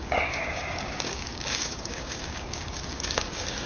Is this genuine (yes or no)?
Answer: no